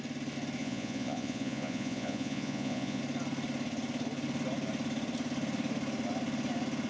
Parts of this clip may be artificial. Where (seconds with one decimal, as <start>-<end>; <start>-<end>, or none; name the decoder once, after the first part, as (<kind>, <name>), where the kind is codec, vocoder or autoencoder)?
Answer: 0.6-3.0 (vocoder, Vocos)